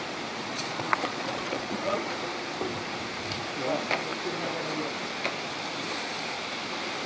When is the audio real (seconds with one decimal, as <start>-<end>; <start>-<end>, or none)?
0.0-0.5; 2.1-7.1